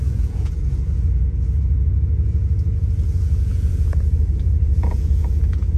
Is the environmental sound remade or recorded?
remade